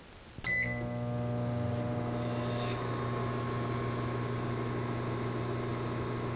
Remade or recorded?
recorded